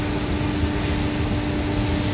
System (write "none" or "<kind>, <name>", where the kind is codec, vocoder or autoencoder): none